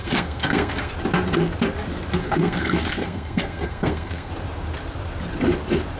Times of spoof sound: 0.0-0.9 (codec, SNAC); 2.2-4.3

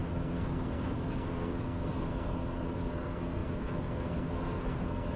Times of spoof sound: 0.0-5.2 (codec, SNAC)

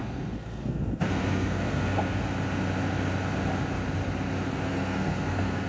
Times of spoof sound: 0.0-2.2 (codec, SNAC); 4.5-5.7

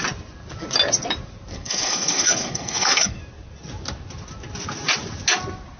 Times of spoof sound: 1.5-3.2 (codec, SNAC)

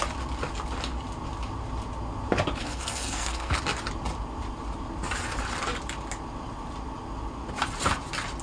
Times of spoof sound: 2.6-3.6 (codec, SNAC)

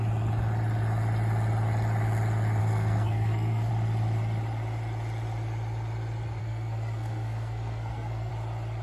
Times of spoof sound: 2.6-3.7 (codec, SNAC); 6.4-8.3

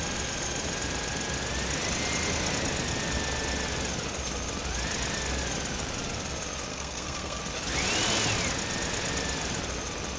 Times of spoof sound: 6.7-7.4 (codec, SNAC)

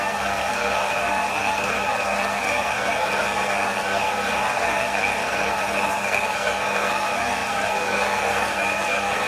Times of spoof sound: 0.0-9.3 (codec, SNAC)